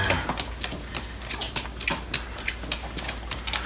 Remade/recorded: recorded